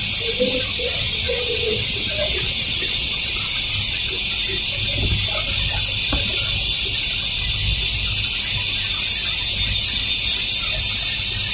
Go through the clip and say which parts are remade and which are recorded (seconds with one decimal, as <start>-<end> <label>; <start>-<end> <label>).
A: 0.0-0.7 recorded; 0.7-3.3 remade; 3.3-11.5 recorded